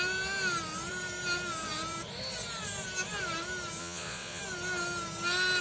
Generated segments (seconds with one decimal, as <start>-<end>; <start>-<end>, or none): 3.8-4.4